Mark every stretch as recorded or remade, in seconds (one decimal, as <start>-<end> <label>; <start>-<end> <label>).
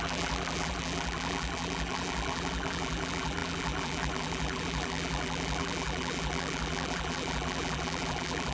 0.0-8.5 remade